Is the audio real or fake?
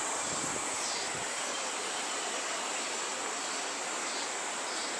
real